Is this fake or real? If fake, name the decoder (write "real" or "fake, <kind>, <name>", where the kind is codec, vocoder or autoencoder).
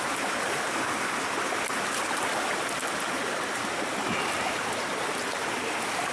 real